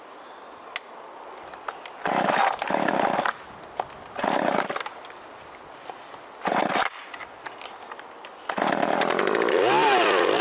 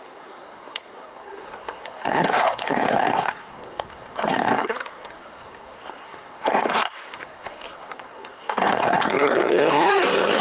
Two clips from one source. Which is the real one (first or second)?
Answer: first